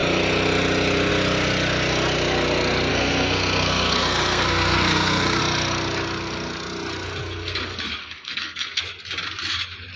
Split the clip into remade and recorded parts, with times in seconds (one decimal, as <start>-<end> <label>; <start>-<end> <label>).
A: 0.0-2.9 recorded; 2.9-5.4 remade; 5.4-8.0 recorded; 8.0-8.8 remade; 8.8-10.0 recorded

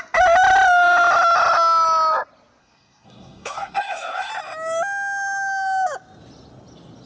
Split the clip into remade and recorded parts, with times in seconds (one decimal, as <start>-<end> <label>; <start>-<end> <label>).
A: 0.0-2.6 recorded; 2.6-4.3 remade; 4.3-7.1 recorded